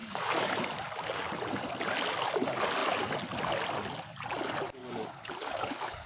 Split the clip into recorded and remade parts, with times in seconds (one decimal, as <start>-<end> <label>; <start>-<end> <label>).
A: 0.0-0.6 remade; 0.6-4.8 recorded; 4.8-6.1 remade